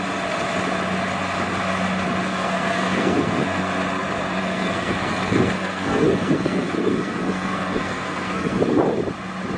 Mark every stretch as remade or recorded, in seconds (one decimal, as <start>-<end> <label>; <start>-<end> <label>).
0.0-2.3 recorded; 2.3-3.7 remade; 3.7-4.4 recorded; 4.4-8.6 remade; 8.6-9.6 recorded